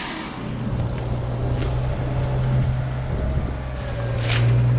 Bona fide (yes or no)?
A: yes